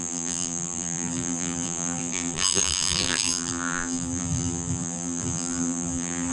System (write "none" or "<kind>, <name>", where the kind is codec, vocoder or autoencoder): vocoder, BigVGAN v2